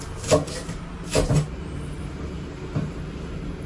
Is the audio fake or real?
real